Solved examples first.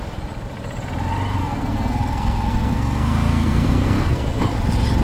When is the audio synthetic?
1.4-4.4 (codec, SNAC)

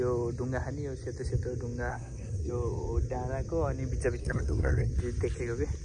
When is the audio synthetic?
1.9-2.5 (codec, SNAC); 4.2-4.9

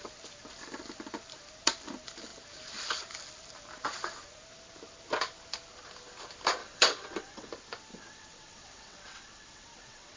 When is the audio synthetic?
6.6-7.5 (vocoder, WaveNeXt); 7.9-10.2

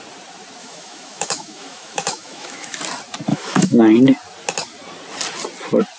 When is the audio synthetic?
0.6-2.8 (autoencoder, DAC-VAE); 3.3-3.8

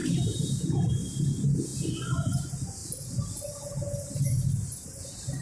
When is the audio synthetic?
none